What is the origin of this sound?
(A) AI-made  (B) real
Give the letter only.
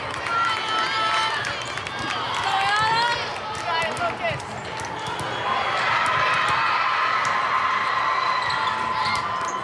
B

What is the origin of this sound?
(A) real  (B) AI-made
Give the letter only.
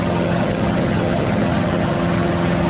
B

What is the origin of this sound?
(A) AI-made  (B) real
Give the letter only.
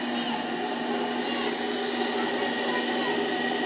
B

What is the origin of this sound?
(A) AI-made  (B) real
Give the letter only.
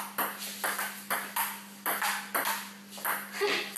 B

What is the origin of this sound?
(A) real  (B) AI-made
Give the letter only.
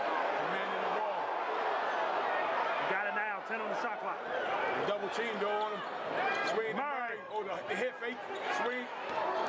A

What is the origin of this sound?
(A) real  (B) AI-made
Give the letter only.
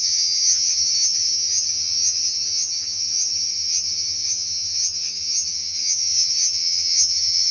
B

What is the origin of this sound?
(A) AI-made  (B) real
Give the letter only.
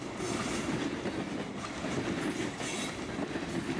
A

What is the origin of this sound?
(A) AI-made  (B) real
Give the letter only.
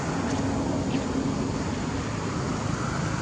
B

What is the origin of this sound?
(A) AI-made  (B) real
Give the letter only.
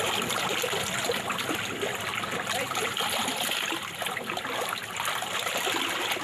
B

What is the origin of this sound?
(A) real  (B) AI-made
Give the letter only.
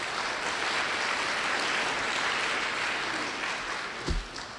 A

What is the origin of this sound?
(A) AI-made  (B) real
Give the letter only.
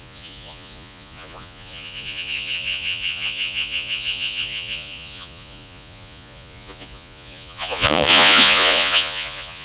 A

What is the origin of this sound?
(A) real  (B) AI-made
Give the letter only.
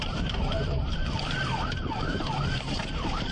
B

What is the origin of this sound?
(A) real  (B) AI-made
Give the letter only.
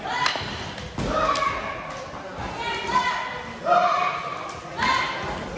A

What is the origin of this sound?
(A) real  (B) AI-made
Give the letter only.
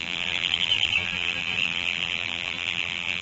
B